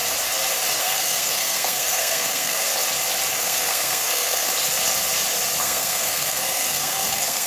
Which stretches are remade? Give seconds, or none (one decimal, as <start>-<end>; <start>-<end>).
0.8-2.7; 3.4-4.5; 5.6-7.5